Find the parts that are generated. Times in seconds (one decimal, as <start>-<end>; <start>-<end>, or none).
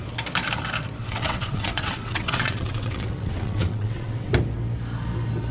1.0-4.3